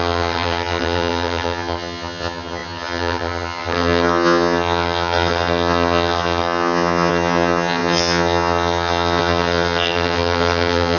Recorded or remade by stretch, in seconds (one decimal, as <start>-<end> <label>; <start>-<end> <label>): 0.0-11.0 remade